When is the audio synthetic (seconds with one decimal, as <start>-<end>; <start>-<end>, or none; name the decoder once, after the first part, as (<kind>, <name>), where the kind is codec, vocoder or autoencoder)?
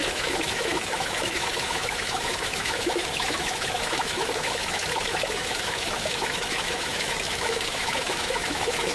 0.0-8.9 (autoencoder, DAC-VAE)